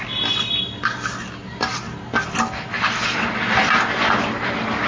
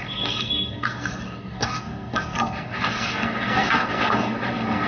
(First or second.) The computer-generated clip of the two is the second